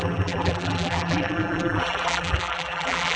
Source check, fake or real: fake